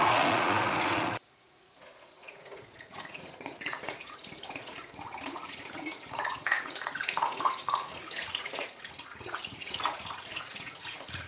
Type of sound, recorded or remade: remade